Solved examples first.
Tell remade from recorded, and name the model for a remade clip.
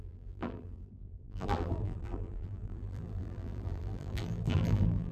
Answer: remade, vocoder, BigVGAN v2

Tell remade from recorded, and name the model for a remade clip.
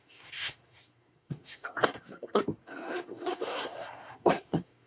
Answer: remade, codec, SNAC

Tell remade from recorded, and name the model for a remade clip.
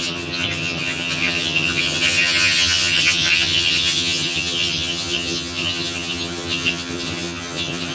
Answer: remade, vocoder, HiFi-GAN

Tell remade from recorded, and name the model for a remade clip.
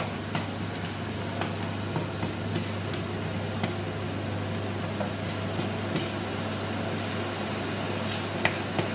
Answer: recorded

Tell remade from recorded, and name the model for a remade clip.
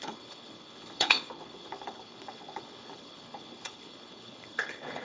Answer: remade, codec, HILCodec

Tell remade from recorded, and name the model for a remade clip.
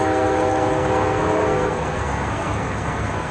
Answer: remade, codec, SNAC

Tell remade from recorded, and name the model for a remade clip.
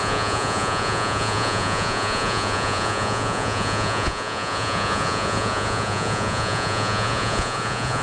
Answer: remade, vocoder, Vocos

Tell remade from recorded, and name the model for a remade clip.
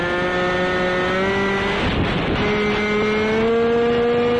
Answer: recorded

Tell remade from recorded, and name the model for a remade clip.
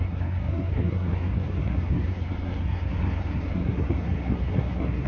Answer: remade, codec, SNAC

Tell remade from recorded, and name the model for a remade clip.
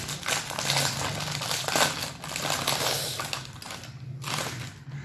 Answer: recorded